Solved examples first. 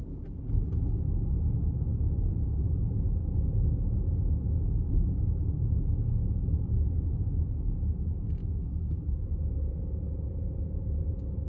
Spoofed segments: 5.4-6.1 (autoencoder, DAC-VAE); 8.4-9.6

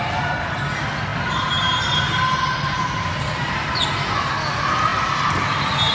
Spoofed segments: none

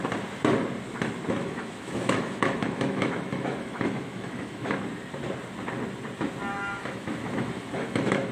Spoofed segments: 1.4-4.8 (autoencoder, DAC-VAE); 6.5-8.3

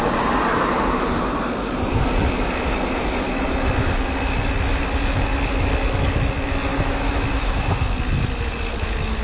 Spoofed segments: 6.7-7.8 (autoencoder, DAC-VAE)

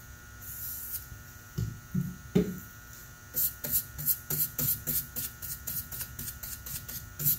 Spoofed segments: none

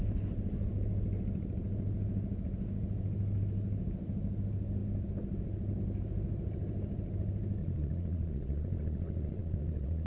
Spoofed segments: 7.6-10.1 (vocoder, Vocos)